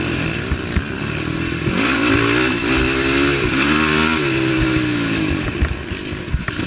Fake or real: real